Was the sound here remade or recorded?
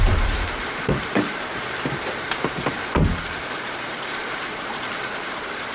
remade